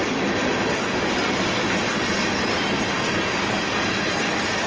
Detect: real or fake real